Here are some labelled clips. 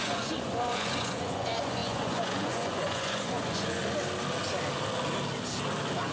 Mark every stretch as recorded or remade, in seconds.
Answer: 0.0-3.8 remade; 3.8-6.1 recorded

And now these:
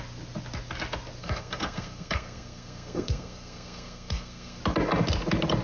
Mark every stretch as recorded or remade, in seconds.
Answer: 0.0-1.2 recorded; 1.2-4.6 remade; 4.6-5.6 recorded

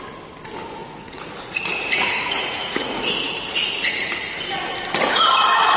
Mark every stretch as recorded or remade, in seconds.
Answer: 0.0-0.8 recorded; 0.8-4.3 remade; 4.3-5.8 recorded

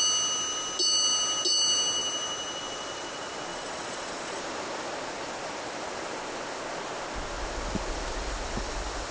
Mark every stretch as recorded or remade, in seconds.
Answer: 0.0-3.5 recorded; 3.5-4.4 remade; 4.4-9.1 recorded

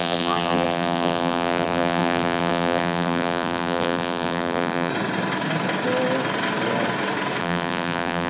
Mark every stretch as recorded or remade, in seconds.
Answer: 0.0-4.9 remade; 4.9-7.4 recorded; 7.4-8.3 remade

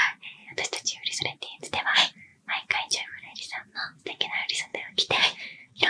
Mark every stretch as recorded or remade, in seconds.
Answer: 0.0-4.7 recorded; 4.7-5.9 remade

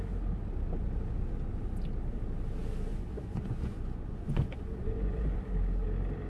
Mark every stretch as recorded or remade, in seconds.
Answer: 0.0-2.9 recorded; 2.9-5.4 remade; 5.4-6.3 recorded

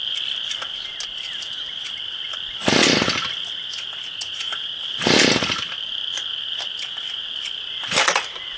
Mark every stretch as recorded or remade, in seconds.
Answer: 0.0-8.6 recorded